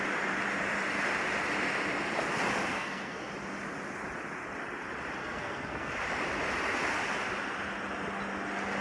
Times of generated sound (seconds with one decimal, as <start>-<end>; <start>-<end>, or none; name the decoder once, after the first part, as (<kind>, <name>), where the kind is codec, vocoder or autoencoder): 2.7-3.3 (codec, SNAC); 5.2-5.9